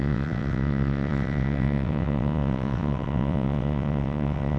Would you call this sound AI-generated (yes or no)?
yes